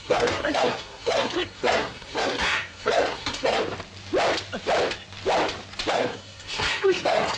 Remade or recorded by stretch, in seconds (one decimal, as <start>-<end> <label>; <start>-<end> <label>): 0.0-3.6 remade; 3.6-5.9 recorded; 5.9-7.4 remade